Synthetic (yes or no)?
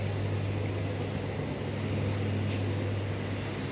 no